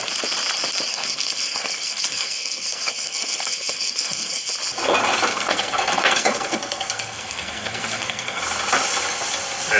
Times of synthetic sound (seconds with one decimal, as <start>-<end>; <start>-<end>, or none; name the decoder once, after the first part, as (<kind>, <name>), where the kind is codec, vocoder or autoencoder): 0.9-4.5 (codec, SNAC); 5.3-8.4

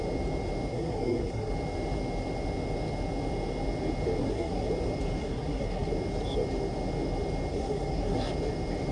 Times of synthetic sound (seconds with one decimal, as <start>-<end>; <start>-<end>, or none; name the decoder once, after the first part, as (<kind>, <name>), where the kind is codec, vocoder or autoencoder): 0.7-1.5 (codec, SNAC); 4.2-4.7; 5.2-5.9; 7.5-8.3

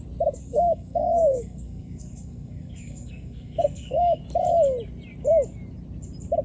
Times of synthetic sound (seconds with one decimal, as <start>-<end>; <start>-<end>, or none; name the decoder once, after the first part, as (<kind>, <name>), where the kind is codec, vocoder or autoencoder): 0.4-4.2 (codec, SNAC)

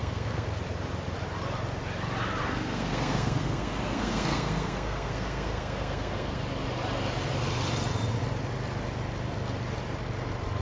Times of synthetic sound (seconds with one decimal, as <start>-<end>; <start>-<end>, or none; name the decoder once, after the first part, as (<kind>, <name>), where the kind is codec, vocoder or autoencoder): 0.0-0.5 (codec, SNAC); 2.4-6.4

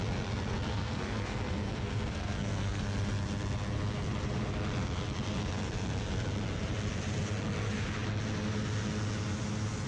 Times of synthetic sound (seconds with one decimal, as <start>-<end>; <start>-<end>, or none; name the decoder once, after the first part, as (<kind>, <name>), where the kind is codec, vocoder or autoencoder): 0.7-2.8 (codec, SNAC)

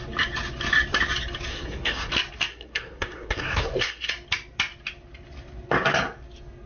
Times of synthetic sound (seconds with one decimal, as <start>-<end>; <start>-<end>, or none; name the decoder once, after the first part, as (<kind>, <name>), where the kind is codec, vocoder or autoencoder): 1.5-2.1 (codec, SNAC); 2.5-4.1